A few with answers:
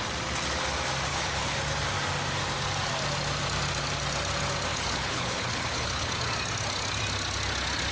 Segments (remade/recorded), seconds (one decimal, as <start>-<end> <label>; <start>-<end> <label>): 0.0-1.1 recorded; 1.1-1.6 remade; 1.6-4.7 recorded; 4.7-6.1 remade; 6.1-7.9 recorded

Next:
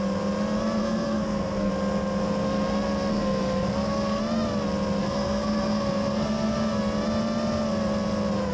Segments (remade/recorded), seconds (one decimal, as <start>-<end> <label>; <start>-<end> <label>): 0.0-0.8 recorded; 0.8-1.7 remade; 1.7-3.1 recorded; 3.1-4.2 remade; 4.2-5.0 recorded; 5.0-6.8 remade; 6.8-8.5 recorded

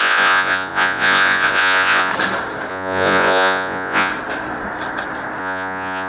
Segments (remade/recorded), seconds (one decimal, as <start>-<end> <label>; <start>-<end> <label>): 0.0-2.1 remade; 2.1-2.7 recorded; 2.7-4.1 remade; 4.1-5.4 recorded; 5.4-6.1 remade

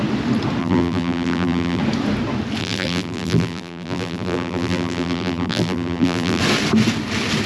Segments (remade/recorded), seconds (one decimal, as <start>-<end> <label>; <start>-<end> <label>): 0.0-0.6 recorded; 0.6-1.8 remade; 1.8-2.6 recorded; 2.6-6.4 remade; 6.4-7.5 recorded